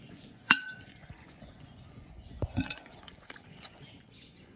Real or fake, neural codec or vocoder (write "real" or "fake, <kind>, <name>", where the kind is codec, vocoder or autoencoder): fake, vocoder, Vocos